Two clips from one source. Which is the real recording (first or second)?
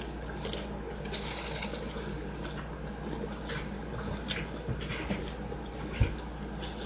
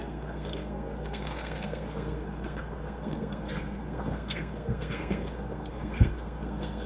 first